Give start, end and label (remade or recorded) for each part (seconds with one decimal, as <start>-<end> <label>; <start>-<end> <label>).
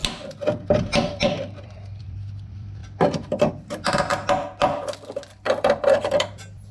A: 0.0-1.6 recorded; 1.6-4.1 remade; 4.1-5.3 recorded; 5.3-6.7 remade